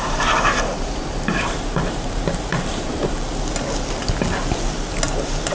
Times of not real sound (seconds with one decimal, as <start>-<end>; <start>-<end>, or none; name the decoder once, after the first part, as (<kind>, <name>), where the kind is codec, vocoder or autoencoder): 0.0-3.3 (vocoder, BigVGAN v2)